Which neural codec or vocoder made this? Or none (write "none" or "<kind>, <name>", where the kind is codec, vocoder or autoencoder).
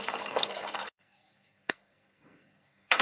codec, SNAC